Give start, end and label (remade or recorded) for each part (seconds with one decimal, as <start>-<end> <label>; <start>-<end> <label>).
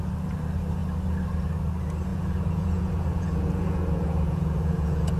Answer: 0.0-2.1 recorded; 2.1-5.2 remade